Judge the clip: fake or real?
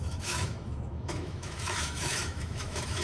fake